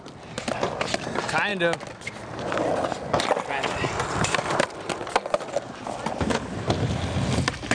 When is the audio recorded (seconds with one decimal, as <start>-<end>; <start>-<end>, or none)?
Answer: 0.0-7.7